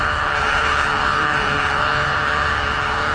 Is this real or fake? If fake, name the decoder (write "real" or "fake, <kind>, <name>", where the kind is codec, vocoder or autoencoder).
fake, codec, HILCodec